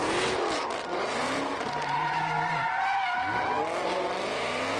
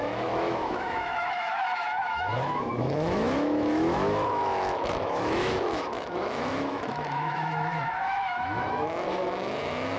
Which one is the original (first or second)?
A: first